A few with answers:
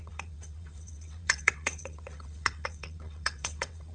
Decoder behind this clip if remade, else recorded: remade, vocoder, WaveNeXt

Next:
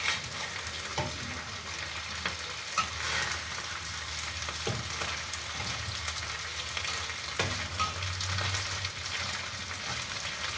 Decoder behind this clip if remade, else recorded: recorded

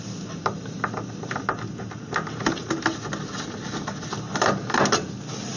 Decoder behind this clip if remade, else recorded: recorded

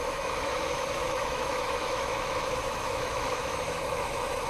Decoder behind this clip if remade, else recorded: remade, autoencoder, DAC-VAE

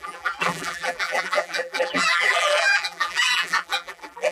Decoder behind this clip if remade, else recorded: remade, vocoder, BigVGAN v2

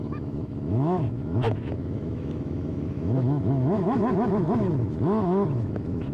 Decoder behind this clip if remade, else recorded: remade, autoencoder, DAC-VAE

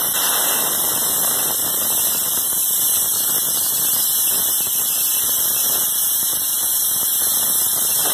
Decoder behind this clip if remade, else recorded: recorded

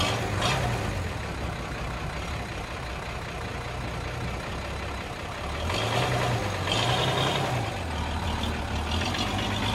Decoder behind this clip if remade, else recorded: recorded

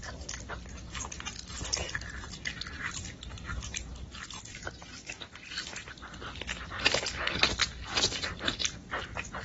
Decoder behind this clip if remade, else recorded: recorded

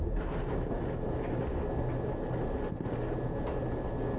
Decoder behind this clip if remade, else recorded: recorded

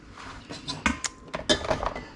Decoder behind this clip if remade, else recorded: recorded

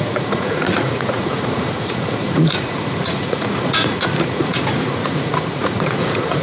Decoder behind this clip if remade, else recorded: remade, vocoder, Vocos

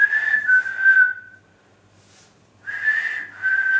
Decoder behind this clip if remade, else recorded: recorded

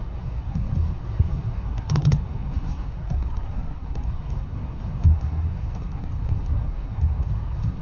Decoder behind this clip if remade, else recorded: remade, codec, SNAC